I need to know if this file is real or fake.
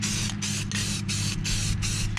real